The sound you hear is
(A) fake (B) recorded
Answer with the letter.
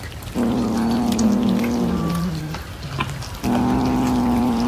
B